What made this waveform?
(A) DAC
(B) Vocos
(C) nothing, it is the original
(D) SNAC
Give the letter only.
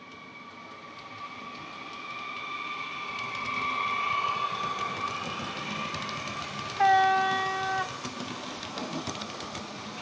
C